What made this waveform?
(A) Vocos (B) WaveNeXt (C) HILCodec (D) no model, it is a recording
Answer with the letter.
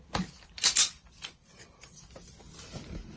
D